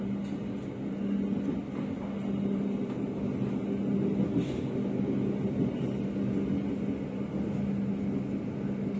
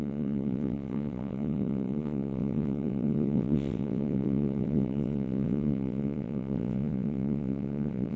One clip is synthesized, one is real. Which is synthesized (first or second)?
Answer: second